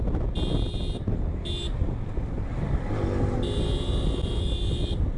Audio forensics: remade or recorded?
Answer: recorded